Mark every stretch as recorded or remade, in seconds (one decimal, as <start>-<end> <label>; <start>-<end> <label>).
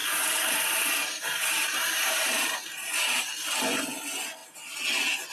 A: 0.0-3.2 remade; 3.2-5.3 recorded